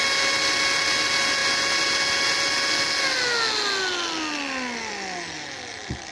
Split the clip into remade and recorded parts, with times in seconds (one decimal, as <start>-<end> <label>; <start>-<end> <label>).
0.0-6.1 recorded